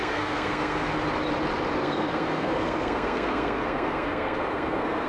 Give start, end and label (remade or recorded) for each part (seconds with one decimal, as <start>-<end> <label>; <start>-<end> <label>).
0.0-0.9 remade; 0.9-1.8 recorded; 1.8-5.1 remade